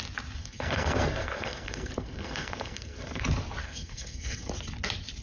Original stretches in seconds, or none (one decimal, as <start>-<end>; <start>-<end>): 0.0-0.4; 3.2-3.6; 4.5-5.2